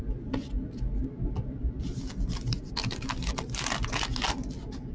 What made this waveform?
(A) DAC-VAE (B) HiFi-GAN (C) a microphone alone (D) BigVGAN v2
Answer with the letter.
C